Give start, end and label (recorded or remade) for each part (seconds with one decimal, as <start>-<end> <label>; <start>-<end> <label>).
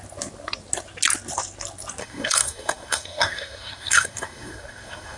0.0-2.0 recorded; 2.0-5.2 remade